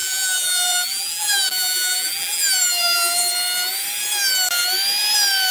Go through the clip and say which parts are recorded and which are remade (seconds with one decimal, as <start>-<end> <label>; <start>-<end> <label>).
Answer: 0.0-3.3 remade; 3.3-5.5 recorded